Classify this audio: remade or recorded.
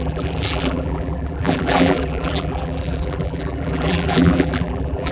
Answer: remade